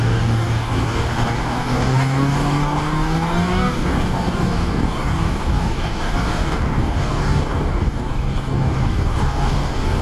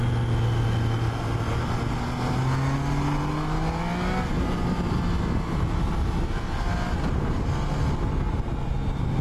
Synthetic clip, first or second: first